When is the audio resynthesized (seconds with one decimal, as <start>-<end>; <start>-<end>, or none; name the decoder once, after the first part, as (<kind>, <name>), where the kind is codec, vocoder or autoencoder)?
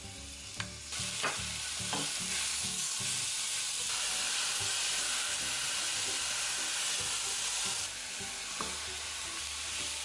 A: 2.5-3.0 (codec, DAC)